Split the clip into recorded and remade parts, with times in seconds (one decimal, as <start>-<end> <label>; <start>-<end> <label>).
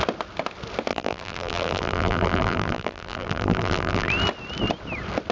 0.0-0.9 recorded; 0.9-4.1 remade; 4.1-5.3 recorded